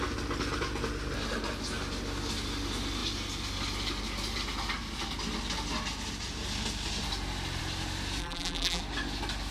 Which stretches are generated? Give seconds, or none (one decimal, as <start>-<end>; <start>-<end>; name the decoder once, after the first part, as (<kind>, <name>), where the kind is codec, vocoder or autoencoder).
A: 8.2-8.8 (vocoder, BigVGAN v2)